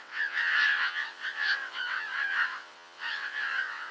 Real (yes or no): no